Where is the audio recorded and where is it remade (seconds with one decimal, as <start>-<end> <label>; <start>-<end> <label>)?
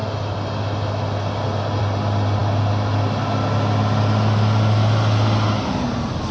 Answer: 0.0-6.3 recorded